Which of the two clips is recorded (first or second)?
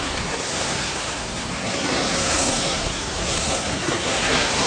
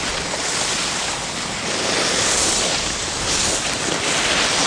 second